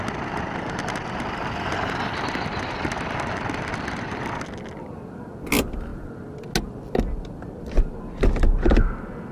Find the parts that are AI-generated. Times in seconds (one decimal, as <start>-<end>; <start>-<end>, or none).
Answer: none